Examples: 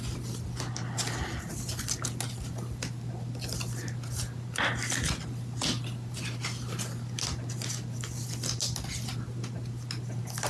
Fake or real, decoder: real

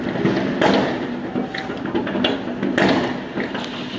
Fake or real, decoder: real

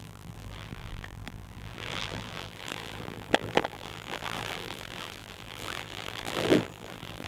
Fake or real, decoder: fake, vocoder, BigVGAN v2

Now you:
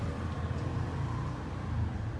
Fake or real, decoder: real